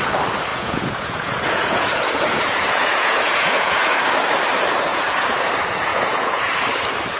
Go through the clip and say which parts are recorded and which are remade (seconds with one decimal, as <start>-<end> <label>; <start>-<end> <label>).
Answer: 0.0-0.5 recorded; 0.5-4.0 remade; 4.0-4.9 recorded; 4.9-5.5 remade; 5.5-5.9 recorded; 5.9-6.4 remade; 6.4-7.2 recorded